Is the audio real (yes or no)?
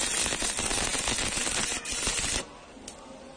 yes